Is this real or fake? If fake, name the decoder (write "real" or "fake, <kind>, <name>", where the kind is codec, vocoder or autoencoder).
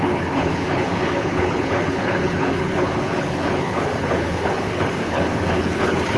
fake, codec, HILCodec